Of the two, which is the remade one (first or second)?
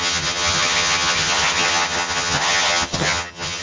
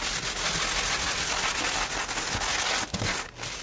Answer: first